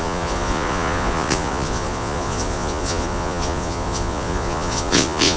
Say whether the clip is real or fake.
fake